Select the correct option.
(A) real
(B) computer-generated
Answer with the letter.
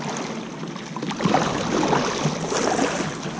A